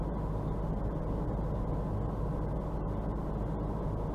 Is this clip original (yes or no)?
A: yes